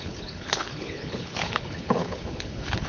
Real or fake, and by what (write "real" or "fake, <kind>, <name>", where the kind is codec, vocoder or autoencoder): fake, codec, HILCodec